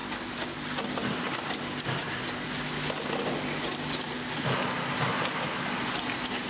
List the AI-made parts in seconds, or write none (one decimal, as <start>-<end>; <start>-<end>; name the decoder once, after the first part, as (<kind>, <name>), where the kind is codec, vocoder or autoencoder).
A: none

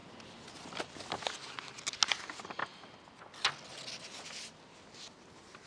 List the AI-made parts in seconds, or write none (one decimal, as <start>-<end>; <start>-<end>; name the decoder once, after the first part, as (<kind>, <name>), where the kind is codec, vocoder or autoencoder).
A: none

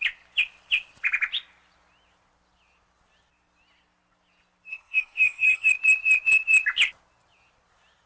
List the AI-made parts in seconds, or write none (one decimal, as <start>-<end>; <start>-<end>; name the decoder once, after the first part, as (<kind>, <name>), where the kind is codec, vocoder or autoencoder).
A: 4.7-5.7 (codec, SNAC)